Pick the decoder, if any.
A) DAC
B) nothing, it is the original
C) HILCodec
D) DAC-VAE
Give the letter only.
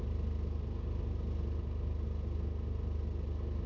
B